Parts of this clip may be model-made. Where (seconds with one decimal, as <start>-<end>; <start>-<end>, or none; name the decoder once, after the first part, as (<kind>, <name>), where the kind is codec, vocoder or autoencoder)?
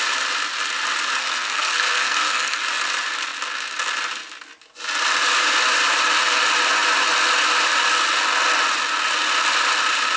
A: 1.2-2.6 (codec, SNAC)